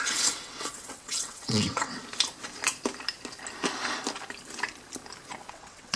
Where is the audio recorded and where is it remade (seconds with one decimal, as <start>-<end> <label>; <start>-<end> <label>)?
0.0-2.0 remade; 2.0-5.5 recorded; 5.5-6.0 remade